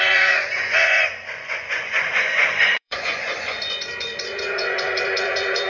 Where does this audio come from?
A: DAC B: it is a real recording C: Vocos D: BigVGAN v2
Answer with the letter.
C